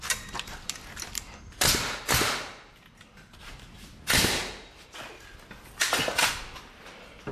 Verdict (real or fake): real